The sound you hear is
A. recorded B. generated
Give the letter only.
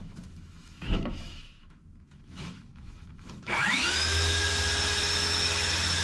B